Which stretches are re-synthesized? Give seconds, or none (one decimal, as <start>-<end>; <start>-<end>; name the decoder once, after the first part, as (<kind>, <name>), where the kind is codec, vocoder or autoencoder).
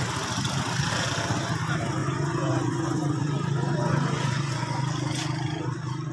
2.0-4.8 (vocoder, Vocos)